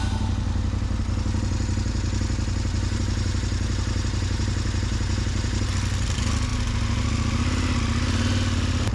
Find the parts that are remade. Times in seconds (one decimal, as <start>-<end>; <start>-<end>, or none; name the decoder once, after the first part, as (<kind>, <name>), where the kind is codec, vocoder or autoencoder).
none